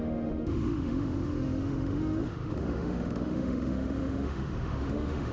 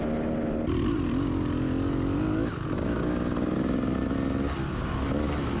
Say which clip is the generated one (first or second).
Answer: first